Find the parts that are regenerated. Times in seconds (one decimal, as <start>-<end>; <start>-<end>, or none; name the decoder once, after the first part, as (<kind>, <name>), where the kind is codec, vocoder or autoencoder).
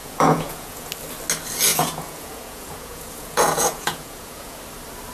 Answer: 0.0-0.9 (vocoder, Vocos); 1.7-4.6